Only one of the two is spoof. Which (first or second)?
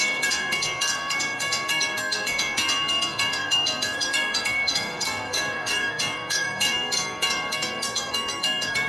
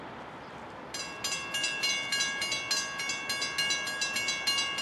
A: first